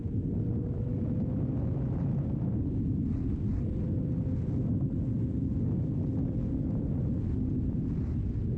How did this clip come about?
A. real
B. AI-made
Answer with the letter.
A